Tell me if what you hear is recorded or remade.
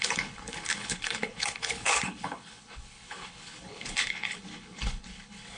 remade